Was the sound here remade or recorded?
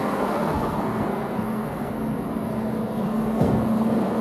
remade